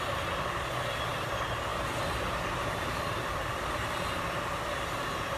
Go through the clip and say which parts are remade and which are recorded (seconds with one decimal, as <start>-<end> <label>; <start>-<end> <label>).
0.0-5.4 recorded